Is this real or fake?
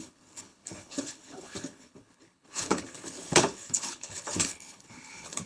fake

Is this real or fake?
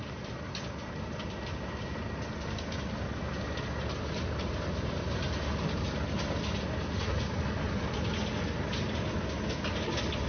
real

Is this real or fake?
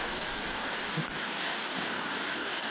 fake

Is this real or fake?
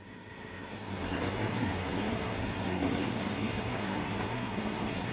fake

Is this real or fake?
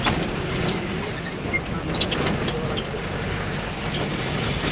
real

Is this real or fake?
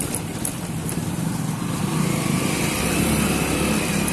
real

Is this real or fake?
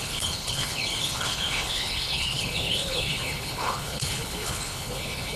fake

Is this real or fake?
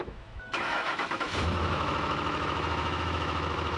fake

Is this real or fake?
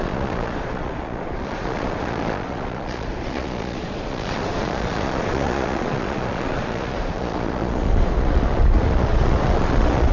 fake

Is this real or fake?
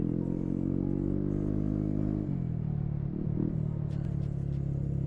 real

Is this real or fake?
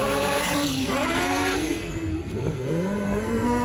fake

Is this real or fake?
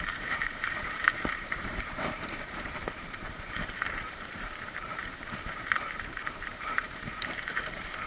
fake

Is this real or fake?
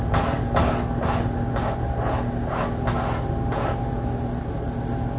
real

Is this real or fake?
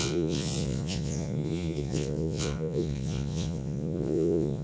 fake